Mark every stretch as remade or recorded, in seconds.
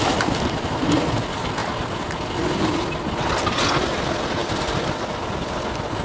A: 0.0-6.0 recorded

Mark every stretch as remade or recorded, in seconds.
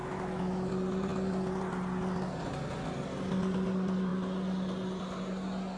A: 0.0-0.7 remade; 0.7-5.8 recorded